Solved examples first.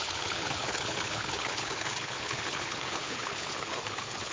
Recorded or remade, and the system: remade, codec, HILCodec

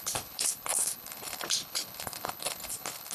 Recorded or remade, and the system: remade, codec, HILCodec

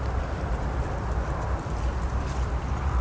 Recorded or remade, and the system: recorded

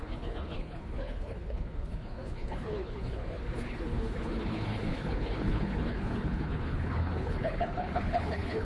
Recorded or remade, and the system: remade, codec, HILCodec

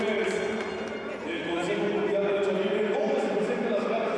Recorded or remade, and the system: recorded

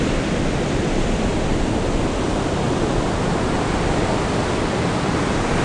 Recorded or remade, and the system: recorded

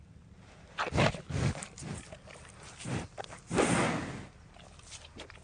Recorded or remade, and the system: recorded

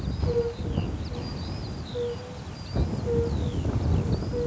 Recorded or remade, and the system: recorded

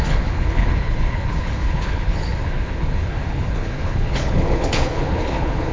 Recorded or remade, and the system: remade, codec, HILCodec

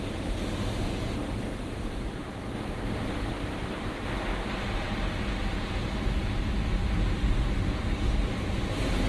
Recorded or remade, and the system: recorded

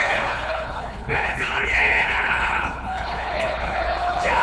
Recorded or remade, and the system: remade, codec, HILCodec